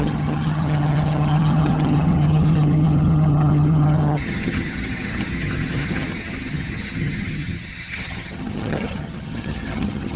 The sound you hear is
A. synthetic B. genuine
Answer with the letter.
A